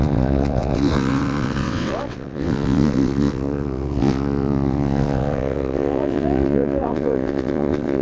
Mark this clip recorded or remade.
remade